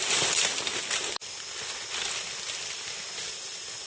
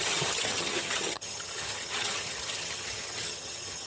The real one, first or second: first